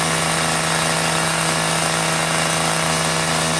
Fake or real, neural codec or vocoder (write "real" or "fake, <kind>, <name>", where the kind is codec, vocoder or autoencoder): real